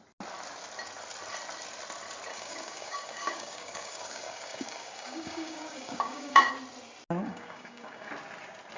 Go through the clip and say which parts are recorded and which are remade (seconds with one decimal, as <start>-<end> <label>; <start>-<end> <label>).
0.0-2.3 recorded; 2.3-6.5 remade; 6.5-7.2 recorded; 7.2-8.1 remade; 8.1-8.8 recorded